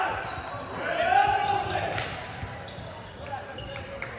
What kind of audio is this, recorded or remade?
recorded